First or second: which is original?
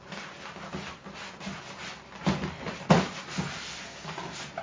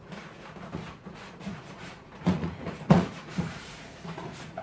first